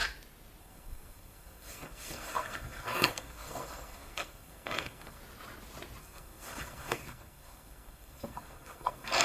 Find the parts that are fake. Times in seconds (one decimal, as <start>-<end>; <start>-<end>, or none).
0.6-5.2; 6.0-9.2